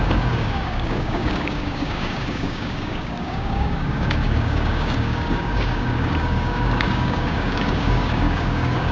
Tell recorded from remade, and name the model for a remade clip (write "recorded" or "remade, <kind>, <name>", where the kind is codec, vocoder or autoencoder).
remade, codec, DAC